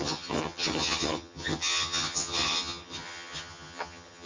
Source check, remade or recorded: remade